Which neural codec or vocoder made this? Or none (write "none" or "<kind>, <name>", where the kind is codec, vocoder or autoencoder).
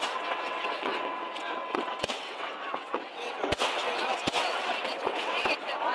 vocoder, WaveNeXt